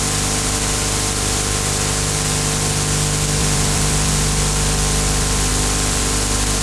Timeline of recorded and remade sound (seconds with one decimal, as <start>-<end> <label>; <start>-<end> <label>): 0.0-3.4 recorded; 3.4-4.1 remade; 4.1-5.5 recorded; 5.5-6.0 remade; 6.0-6.6 recorded